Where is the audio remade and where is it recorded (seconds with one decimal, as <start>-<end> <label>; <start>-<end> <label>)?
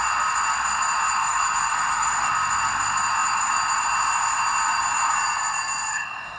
0.0-1.2 recorded; 1.2-2.3 remade; 2.3-5.9 recorded; 5.9-6.4 remade